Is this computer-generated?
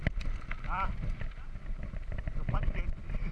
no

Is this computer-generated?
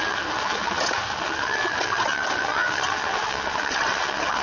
yes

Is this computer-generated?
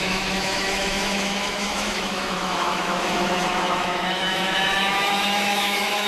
yes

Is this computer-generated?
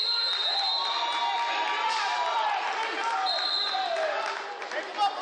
no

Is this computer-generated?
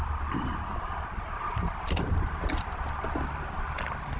no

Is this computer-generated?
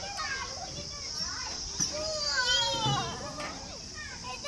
no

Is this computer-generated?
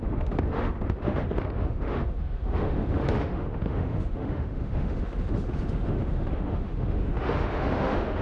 yes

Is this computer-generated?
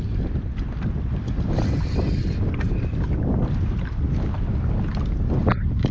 no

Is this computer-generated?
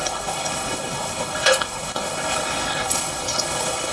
yes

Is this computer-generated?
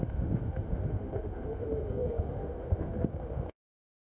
yes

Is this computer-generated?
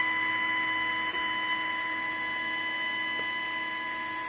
no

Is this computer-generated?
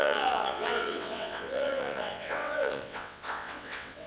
yes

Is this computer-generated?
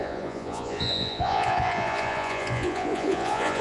yes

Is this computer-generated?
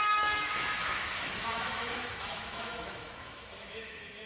yes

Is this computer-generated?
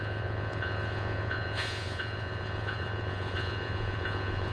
yes